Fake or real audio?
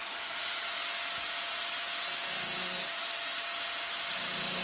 real